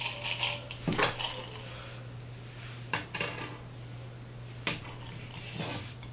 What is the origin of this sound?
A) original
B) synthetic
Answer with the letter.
A